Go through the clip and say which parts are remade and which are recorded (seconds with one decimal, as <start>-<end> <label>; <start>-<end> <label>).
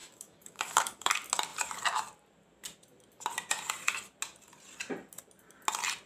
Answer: 0.0-1.1 remade; 1.1-6.1 recorded